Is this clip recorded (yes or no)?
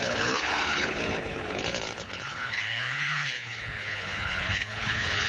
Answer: no